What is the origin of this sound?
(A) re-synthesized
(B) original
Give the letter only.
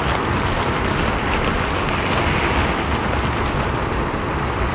B